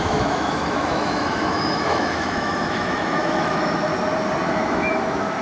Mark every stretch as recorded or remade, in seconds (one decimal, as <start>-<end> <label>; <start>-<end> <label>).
0.0-3.9 remade; 3.9-4.5 recorded; 4.5-5.4 remade